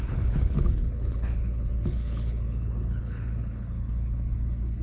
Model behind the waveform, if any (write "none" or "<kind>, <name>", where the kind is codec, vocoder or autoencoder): codec, HILCodec